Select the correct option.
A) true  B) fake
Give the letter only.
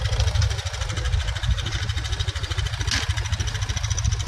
A